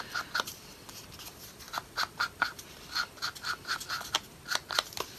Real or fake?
real